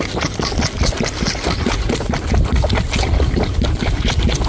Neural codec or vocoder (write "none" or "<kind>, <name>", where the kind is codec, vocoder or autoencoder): none